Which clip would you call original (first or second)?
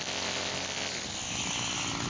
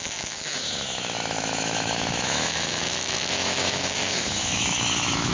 first